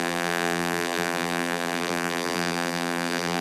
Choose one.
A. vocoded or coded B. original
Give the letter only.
A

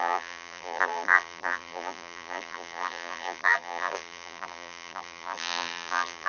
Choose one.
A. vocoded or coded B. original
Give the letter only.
A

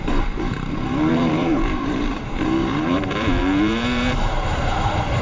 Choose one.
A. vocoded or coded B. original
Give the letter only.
A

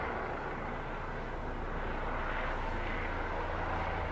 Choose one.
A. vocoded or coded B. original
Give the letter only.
B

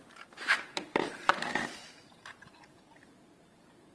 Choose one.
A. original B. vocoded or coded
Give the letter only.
B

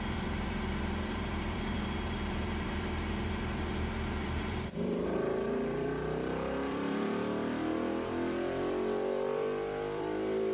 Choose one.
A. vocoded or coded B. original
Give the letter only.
A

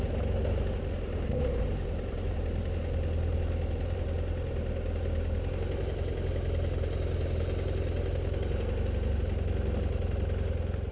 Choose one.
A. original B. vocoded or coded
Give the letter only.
A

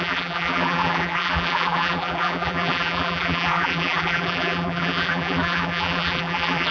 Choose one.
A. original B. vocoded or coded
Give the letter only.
B